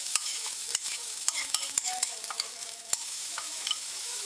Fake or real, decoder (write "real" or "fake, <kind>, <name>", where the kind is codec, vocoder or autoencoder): fake, autoencoder, DAC-VAE